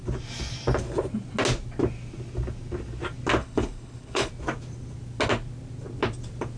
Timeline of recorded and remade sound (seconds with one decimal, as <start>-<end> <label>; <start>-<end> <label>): 0.0-3.4 recorded; 3.4-4.3 remade; 4.3-6.6 recorded